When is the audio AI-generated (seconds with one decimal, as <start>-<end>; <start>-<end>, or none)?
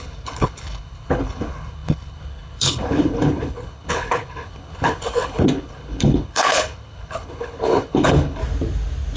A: 0.0-8.4